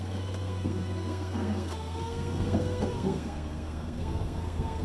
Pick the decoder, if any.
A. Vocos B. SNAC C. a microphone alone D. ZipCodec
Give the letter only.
B